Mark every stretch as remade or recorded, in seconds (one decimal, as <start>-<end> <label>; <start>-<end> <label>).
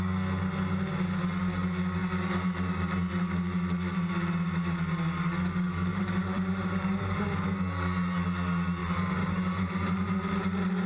0.0-5.9 recorded; 5.9-7.2 remade; 7.2-8.8 recorded; 8.8-10.1 remade; 10.1-10.9 recorded